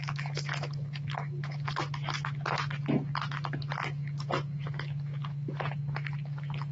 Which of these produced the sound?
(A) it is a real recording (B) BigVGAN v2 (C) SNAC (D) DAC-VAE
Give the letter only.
D